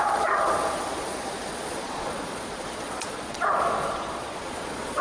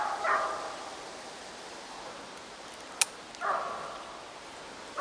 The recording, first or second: second